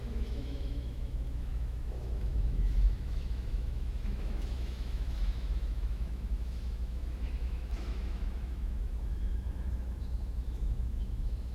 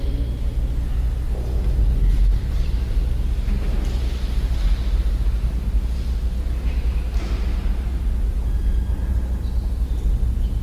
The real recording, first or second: second